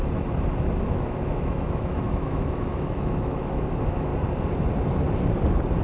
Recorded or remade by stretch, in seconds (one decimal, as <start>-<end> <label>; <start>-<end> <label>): 0.0-0.8 recorded; 0.8-4.1 remade; 4.1-5.8 recorded